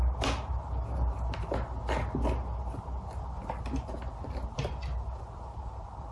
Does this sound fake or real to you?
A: real